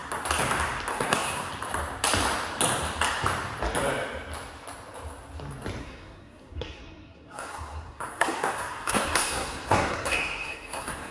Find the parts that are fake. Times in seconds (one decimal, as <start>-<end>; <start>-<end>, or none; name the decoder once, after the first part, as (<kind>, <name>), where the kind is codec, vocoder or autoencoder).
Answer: 0.9-1.5 (codec, SNAC); 5.8-11.1

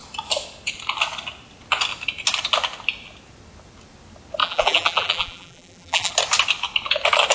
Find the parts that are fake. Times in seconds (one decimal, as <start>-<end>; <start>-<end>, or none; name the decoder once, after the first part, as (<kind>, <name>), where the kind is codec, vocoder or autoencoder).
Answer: 4.4-6.1 (vocoder, BigVGAN v2)

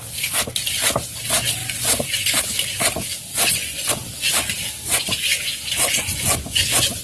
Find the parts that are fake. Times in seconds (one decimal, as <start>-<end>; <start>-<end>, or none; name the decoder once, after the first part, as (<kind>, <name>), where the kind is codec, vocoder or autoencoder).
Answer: 1.6-2.4 (vocoder, Vocos); 3.3-3.9; 4.8-7.0

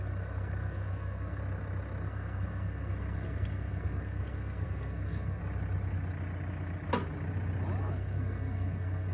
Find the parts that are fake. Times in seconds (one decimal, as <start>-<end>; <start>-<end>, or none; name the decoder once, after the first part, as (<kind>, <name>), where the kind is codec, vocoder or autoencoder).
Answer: 0.0-1.4 (codec, SNAC); 2.0-5.4; 7.8-9.1

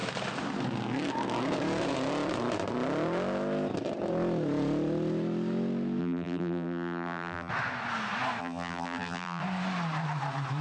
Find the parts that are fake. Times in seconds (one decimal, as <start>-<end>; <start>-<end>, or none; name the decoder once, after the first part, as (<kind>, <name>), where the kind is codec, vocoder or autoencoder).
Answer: 6.0-7.5 (vocoder, BigVGAN v2); 8.4-9.4